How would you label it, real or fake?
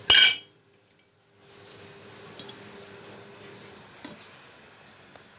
real